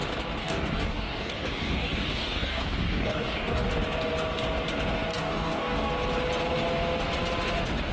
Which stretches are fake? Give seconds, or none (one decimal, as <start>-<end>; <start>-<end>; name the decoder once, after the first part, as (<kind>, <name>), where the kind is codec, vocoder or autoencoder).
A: 0.4-3.7 (codec, DAC); 5.1-5.9

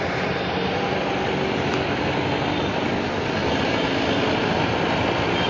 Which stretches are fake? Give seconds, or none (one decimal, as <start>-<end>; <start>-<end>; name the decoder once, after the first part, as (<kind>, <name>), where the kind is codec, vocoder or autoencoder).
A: none

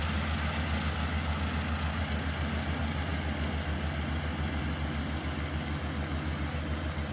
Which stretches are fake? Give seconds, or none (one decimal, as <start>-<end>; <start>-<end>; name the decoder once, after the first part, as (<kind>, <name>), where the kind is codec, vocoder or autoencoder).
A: none

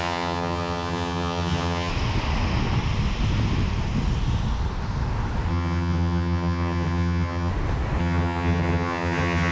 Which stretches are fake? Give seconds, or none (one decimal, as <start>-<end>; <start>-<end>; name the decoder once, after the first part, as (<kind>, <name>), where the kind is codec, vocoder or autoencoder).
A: 0.0-1.9 (vocoder, HiFi-GAN); 5.5-7.5; 8.0-9.5

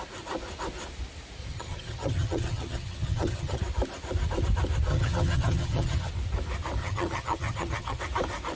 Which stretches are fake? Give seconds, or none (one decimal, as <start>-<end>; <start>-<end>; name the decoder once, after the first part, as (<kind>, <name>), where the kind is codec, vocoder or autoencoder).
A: 1.4-3.6 (vocoder, HiFi-GAN); 4.9-6.1; 6.8-8.0